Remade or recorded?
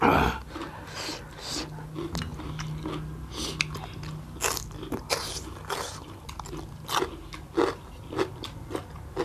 recorded